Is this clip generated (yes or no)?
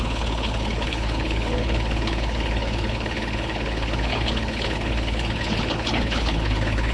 yes